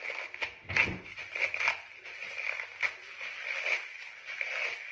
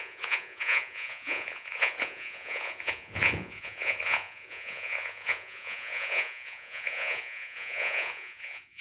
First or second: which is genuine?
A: first